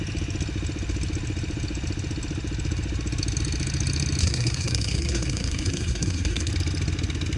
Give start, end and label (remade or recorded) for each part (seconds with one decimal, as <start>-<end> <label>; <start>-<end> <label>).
0.0-4.2 recorded; 4.2-6.5 remade; 6.5-7.4 recorded